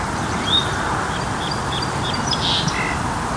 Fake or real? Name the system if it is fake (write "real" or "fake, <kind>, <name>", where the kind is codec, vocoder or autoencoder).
real